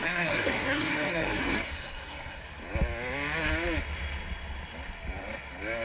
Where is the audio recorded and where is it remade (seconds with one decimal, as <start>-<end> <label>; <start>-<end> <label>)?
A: 0.0-2.4 remade; 2.4-5.8 recorded